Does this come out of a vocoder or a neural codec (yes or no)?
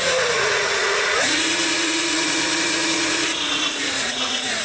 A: yes